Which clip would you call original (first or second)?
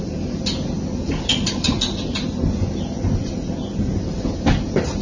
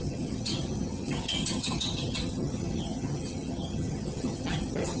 first